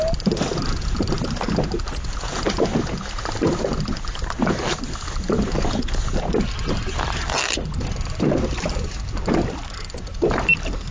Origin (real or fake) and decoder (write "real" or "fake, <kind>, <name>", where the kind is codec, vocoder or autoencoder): real